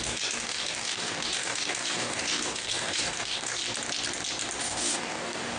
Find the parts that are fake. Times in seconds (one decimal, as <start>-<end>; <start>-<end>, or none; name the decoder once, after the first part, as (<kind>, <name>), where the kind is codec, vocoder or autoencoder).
0.0-3.6 (codec, DAC); 4.6-5.6